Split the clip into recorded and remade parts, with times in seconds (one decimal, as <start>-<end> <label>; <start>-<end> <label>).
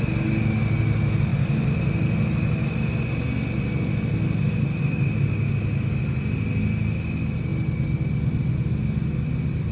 0.0-9.7 recorded